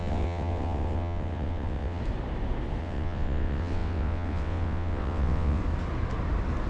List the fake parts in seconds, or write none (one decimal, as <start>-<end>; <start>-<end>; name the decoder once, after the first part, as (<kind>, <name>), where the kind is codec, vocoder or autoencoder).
0.0-2.0 (vocoder, WaveNeXt); 2.8-5.6